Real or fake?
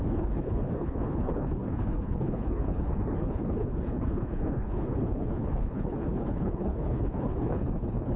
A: fake